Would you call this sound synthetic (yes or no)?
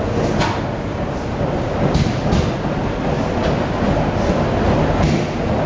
no